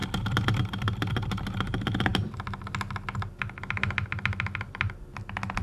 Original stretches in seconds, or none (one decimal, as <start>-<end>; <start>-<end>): 0.0-5.6